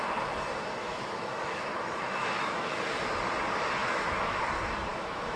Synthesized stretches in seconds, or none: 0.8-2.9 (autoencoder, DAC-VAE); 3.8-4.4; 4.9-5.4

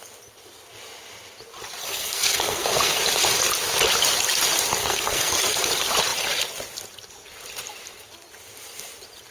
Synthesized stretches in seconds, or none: 1.8-3.0 (codec, SNAC); 4.8-5.6

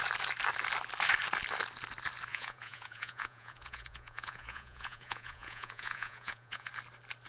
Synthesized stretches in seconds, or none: 2.3-6.7 (vocoder, Vocos)